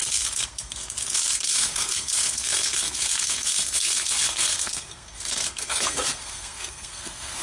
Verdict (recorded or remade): remade